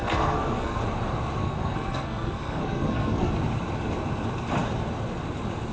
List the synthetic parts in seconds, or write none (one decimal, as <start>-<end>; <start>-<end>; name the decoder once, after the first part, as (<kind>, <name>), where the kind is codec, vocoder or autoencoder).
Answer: 0.0-0.8 (codec, SNAC); 1.4-3.3